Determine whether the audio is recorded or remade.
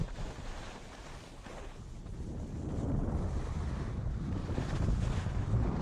recorded